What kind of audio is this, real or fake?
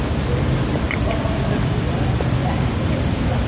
real